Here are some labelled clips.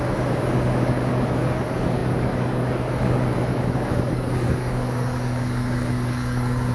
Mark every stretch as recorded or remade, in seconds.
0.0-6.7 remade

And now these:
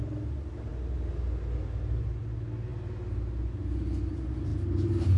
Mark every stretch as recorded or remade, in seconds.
0.0-5.2 recorded

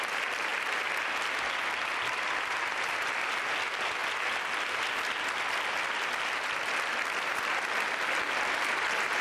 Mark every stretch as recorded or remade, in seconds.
0.0-9.2 recorded

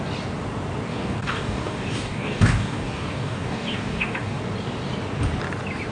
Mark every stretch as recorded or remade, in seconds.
0.0-0.9 recorded; 0.9-4.4 remade; 4.4-5.9 recorded

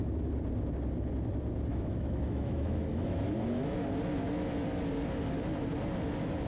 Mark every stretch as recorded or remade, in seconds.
0.0-1.7 recorded; 1.7-3.8 remade; 3.8-6.5 recorded

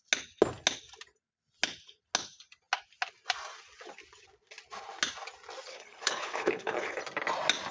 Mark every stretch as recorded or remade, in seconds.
0.0-5.7 recorded; 5.7-7.0 remade; 7.0-7.7 recorded

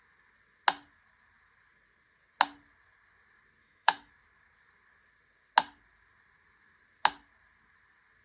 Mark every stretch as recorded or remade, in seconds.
0.0-3.6 recorded; 3.6-4.1 remade; 4.1-8.2 recorded

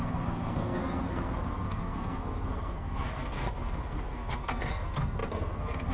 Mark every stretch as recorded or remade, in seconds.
0.0-5.9 remade